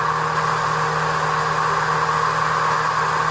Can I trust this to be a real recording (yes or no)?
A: yes